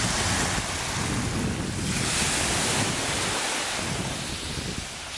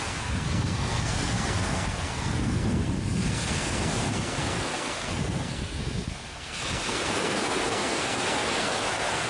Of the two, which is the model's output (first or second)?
second